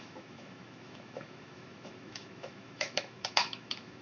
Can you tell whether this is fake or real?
fake